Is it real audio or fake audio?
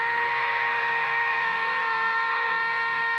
fake